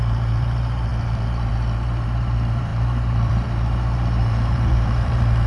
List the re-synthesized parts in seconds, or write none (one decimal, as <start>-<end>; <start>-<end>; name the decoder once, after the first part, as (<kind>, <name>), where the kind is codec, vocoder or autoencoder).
0.0-5.5 (vocoder, BigVGAN v2)